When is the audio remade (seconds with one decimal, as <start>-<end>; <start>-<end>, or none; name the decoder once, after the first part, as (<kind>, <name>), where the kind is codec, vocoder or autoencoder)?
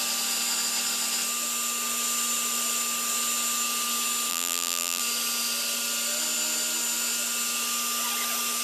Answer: 4.3-5.0 (vocoder, BigVGAN v2)